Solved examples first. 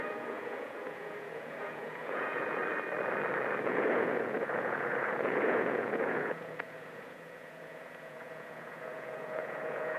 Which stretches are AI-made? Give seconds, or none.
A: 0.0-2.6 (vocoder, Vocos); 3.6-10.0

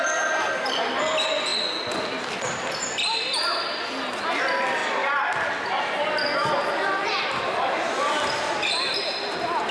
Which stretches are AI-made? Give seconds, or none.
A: none